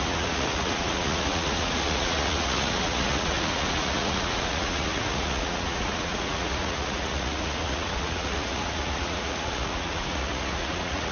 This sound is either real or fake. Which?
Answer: fake